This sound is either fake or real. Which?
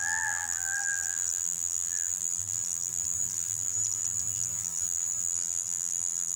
fake